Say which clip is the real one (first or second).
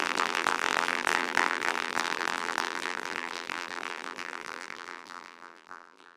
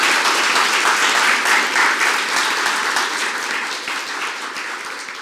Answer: second